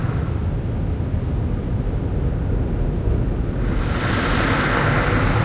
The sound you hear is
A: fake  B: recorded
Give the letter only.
B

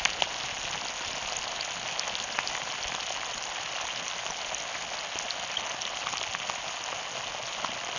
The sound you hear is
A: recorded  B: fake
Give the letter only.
A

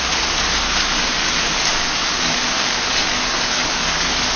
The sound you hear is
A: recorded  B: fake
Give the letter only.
B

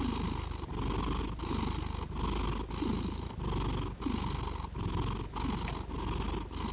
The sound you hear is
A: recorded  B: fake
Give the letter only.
A